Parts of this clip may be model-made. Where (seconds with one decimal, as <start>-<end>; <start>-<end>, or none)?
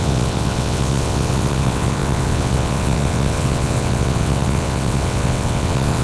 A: 0.0-6.0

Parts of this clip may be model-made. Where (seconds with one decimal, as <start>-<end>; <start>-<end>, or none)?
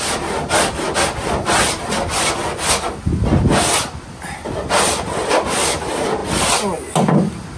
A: none